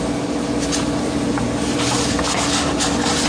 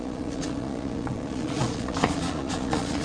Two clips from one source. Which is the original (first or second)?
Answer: first